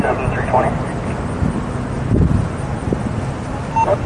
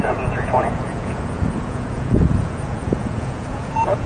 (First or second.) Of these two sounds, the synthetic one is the second